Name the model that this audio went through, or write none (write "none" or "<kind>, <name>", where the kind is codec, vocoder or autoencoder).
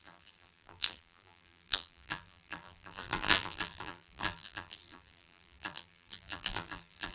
vocoder, BigVGAN v2